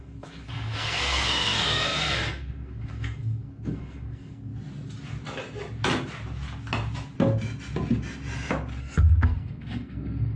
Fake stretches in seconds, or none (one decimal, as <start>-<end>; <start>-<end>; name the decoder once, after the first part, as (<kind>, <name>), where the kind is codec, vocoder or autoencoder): 0.0-4.5 (codec, SNAC); 8.8-10.4